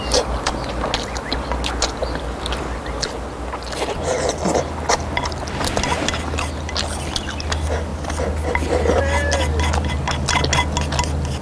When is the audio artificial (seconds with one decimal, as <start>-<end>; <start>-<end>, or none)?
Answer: none